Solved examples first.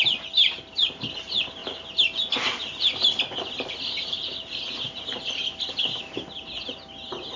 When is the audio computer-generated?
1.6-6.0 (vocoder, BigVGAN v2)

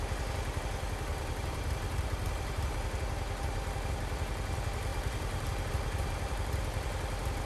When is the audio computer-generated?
1.1-2.8 (vocoder, BigVGAN v2); 4.9-5.8

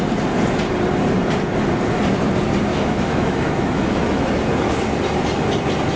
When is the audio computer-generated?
2.7-4.2 (autoencoder, DAC-VAE)

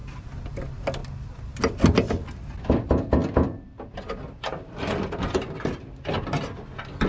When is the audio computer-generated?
none

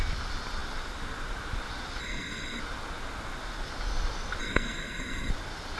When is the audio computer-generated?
2.0-2.6 (codec, SNAC); 4.4-5.3

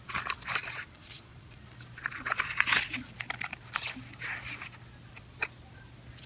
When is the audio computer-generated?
0.6-1.6 (vocoder, Vocos)

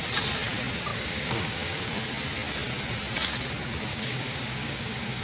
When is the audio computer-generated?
0.9-2.0 (codec, DAC); 3.9-5.2